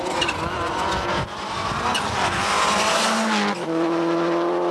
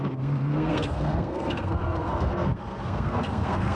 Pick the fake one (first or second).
second